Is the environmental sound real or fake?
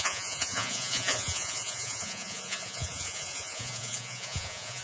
fake